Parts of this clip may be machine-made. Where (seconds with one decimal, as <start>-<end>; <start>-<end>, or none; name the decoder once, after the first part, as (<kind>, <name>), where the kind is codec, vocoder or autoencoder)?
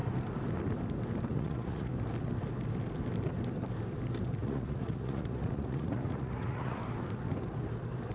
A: 1.3-1.9 (vocoder, Vocos); 4.4-6.8